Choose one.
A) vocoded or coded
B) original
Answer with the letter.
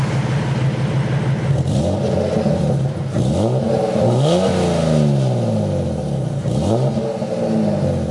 B